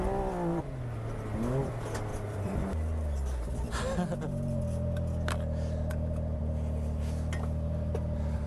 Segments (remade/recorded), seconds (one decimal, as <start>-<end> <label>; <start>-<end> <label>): 0.0-2.1 recorded; 2.1-2.6 remade; 2.6-8.5 recorded